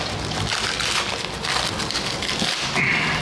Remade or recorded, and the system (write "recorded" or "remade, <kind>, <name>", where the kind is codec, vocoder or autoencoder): recorded